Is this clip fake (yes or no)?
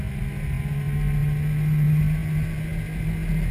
no